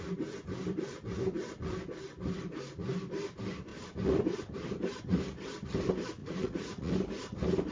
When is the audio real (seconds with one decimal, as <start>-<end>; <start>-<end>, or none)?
0.0-6.2; 6.9-7.7